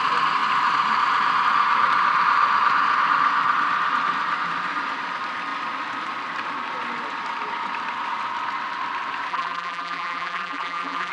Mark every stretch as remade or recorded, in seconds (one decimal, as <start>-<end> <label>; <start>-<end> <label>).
0.0-9.3 recorded; 9.3-11.1 remade